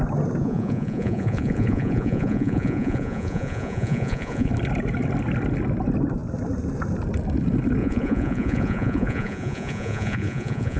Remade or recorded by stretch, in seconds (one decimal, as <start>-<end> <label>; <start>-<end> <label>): 0.0-0.4 recorded; 0.4-4.5 remade; 4.5-7.8 recorded; 7.8-10.8 remade